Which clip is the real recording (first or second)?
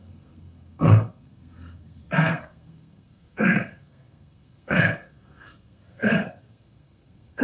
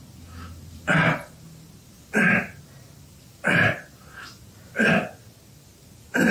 second